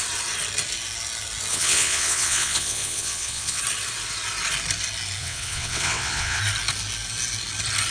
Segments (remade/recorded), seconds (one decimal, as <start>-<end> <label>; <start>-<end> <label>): 0.0-1.5 recorded; 1.5-3.6 remade; 3.6-5.2 recorded; 5.2-6.4 remade; 6.4-7.9 recorded